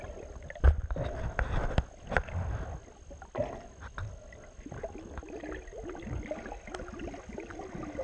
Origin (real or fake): real